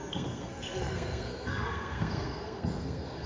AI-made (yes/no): yes